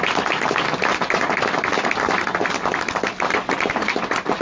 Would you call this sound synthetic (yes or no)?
no